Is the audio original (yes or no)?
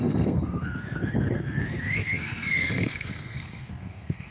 no